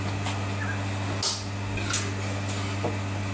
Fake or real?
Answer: real